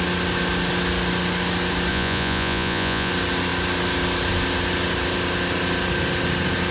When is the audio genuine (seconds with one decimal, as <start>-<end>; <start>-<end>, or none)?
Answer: 0.0-1.9; 3.1-6.7